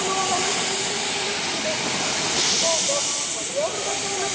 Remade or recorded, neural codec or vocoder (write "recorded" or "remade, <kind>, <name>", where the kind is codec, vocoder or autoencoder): recorded